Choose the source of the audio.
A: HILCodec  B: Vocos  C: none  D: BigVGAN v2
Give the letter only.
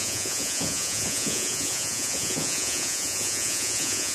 B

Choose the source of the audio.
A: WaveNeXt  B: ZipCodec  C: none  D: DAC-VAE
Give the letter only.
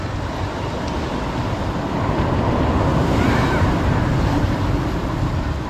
C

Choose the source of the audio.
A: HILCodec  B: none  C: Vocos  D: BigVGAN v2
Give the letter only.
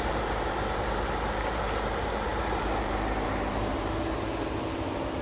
D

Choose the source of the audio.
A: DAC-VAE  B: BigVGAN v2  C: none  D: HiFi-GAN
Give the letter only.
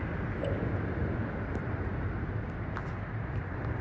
C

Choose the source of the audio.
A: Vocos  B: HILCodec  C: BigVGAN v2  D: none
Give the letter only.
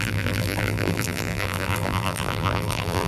C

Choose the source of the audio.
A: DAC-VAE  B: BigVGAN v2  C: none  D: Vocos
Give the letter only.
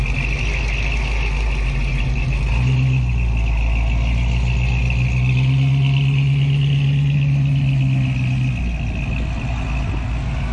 C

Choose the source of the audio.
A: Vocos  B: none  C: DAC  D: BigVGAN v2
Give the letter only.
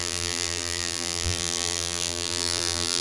D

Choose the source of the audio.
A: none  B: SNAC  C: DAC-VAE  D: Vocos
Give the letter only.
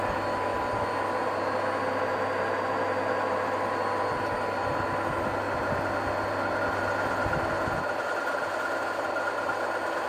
A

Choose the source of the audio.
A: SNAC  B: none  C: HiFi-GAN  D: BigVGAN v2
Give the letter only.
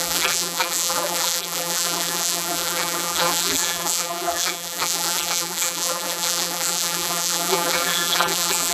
D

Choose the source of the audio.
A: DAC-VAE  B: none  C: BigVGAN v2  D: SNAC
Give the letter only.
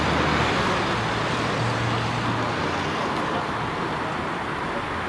B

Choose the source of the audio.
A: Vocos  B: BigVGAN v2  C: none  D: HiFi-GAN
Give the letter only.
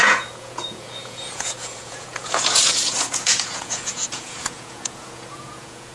A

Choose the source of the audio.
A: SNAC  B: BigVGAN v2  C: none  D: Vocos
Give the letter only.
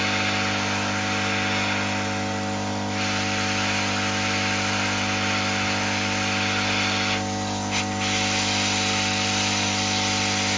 C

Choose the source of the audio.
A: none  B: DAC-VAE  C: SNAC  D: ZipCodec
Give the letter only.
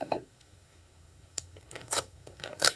C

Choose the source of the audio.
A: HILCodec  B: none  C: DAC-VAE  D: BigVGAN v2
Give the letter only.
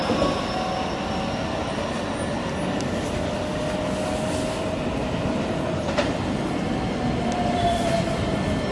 B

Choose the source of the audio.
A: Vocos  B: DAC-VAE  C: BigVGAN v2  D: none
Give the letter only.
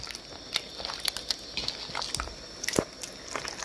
D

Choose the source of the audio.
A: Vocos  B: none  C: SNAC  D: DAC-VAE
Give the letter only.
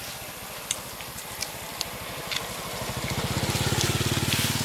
B